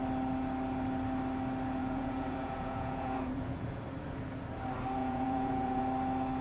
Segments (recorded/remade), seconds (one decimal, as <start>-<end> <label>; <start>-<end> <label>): 0.0-1.8 recorded; 1.8-3.8 remade; 3.8-5.0 recorded; 5.0-5.8 remade; 5.8-6.4 recorded